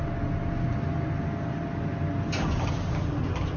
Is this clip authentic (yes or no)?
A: yes